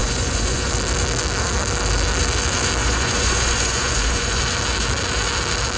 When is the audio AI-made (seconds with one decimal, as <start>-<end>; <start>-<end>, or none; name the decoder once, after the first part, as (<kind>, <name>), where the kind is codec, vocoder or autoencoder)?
0.0-0.7 (vocoder, Vocos); 2.8-4.4